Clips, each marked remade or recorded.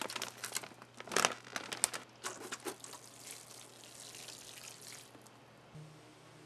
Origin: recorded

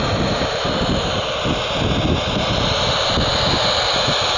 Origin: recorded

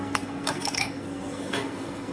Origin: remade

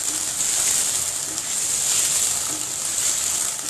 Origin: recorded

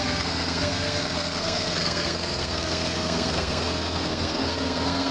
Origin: remade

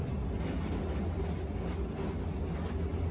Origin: recorded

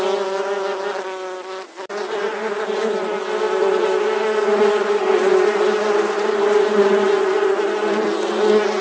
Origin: recorded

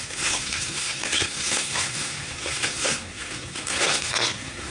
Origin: remade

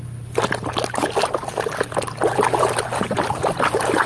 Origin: recorded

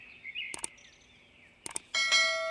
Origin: recorded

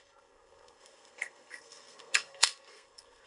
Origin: remade